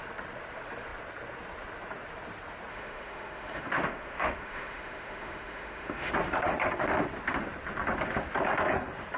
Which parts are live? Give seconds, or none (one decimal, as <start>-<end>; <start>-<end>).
0.0-2.7; 6.1-9.2